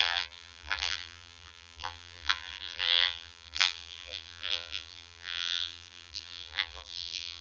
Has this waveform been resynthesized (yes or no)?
yes